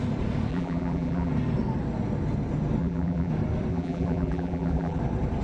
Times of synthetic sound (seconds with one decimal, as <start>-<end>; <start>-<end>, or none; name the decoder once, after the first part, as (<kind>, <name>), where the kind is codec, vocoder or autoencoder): 0.5-1.3 (vocoder, BigVGAN v2); 2.8-3.3; 3.7-5.0

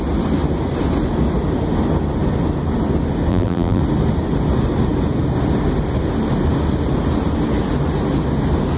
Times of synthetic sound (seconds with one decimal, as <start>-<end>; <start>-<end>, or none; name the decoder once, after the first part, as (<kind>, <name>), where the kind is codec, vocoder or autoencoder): 3.3-3.8 (vocoder, BigVGAN v2)